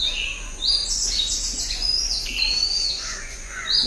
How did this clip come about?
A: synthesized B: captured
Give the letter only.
A